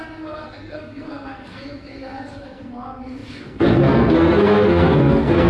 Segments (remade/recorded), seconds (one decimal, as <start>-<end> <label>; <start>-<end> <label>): 0.0-5.5 remade